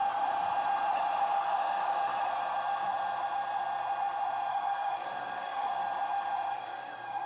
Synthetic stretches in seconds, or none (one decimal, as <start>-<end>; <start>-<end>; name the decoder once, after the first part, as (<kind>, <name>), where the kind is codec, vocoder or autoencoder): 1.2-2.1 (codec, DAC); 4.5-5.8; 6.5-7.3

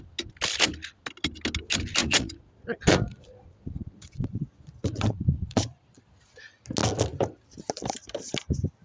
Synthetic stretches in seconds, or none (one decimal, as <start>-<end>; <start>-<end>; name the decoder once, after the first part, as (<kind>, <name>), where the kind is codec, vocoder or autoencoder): 2.0-6.0 (vocoder, Vocos)

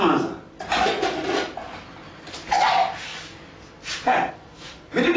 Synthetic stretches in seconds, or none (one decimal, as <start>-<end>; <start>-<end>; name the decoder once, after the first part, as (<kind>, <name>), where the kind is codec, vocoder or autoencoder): none

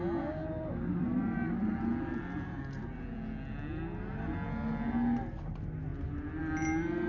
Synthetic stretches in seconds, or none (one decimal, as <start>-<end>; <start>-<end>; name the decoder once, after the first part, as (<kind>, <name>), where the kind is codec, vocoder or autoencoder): none

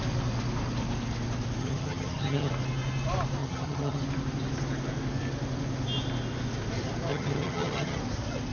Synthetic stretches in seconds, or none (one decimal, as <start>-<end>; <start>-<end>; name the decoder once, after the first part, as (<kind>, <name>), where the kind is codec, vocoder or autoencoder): 1.6-2.5 (vocoder, HiFi-GAN); 3.4-4.0; 7.1-8.0

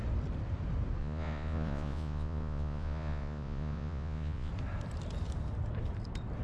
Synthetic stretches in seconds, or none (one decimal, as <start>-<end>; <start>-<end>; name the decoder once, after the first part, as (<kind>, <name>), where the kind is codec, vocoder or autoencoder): 1.0-4.5 (vocoder, Vocos)

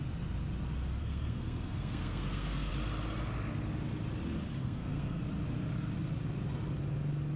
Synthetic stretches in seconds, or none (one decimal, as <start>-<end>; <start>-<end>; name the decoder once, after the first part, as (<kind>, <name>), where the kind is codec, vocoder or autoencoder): 1.0-2.7 (codec, SNAC); 4.6-5.2

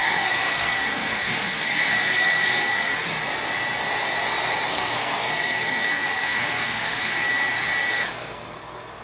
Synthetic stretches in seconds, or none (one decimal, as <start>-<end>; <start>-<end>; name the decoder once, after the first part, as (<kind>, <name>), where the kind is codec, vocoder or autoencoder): 0.0-2.9 (codec, SNAC); 4.7-7.3; 7.9-9.0